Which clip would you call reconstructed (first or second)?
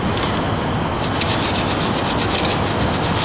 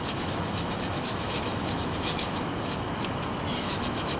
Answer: second